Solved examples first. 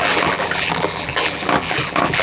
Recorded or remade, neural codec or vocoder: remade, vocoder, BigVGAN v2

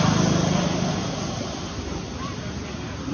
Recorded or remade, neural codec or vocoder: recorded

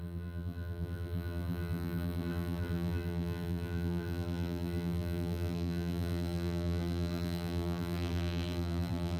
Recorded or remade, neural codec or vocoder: remade, vocoder, BigVGAN v2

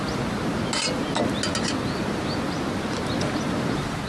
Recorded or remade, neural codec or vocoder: recorded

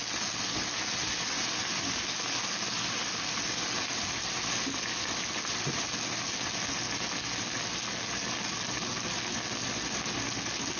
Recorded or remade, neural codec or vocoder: recorded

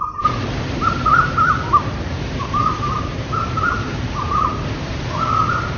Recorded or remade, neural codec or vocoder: remade, vocoder, BigVGAN v2